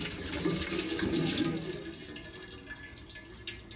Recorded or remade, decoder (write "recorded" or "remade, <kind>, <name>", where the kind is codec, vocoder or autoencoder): recorded